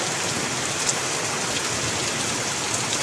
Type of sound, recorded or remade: recorded